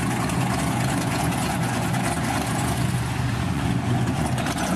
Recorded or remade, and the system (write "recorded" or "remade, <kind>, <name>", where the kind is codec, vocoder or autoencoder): remade, vocoder, Vocos